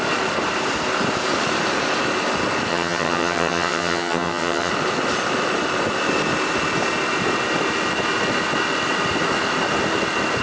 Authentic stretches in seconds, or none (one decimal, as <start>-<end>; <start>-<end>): 0.0-2.7; 4.7-10.4